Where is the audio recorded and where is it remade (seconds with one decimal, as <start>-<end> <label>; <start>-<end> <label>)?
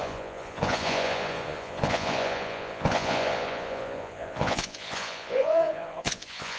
0.0-6.6 remade